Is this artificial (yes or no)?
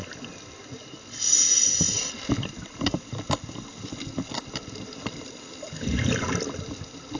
no